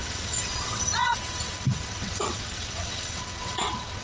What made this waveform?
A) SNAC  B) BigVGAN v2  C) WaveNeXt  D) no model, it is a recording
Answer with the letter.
C